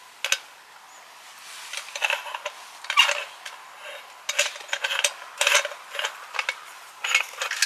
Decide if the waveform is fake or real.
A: real